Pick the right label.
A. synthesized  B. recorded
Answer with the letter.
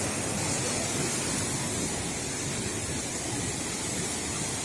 B